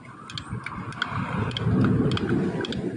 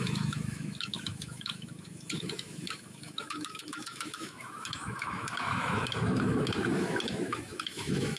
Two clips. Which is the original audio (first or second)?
first